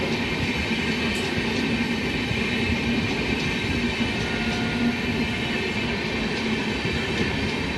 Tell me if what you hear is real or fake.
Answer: real